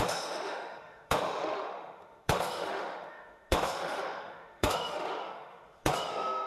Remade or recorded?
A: remade